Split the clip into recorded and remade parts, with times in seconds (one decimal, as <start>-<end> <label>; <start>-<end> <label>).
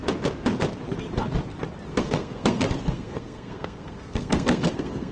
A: 0.0-1.9 recorded; 1.9-5.1 remade